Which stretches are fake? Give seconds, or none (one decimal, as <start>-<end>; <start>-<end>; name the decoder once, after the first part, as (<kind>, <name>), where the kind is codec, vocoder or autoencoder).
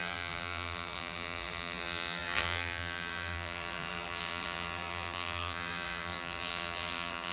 0.0-7.3 (vocoder, BigVGAN v2)